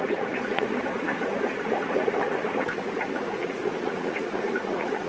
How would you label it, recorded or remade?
remade